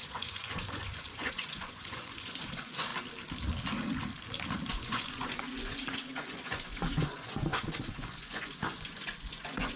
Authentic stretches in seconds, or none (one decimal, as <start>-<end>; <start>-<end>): 2.9-4.7